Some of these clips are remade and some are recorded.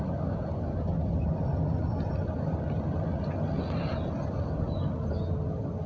recorded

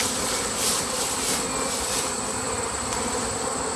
recorded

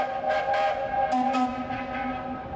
recorded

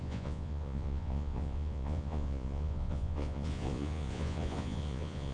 remade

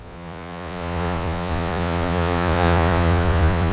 remade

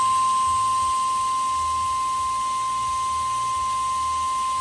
recorded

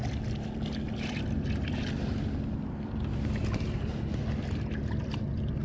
recorded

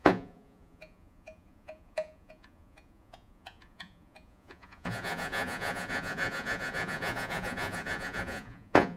remade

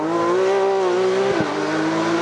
recorded